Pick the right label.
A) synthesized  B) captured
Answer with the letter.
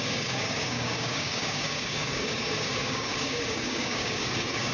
A